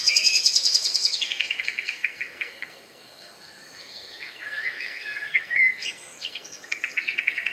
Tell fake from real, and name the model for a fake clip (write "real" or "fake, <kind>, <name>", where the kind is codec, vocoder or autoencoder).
fake, codec, SNAC